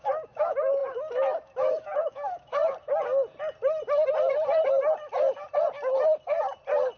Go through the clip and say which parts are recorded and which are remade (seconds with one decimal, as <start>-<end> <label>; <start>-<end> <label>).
0.0-2.6 remade; 2.6-7.0 recorded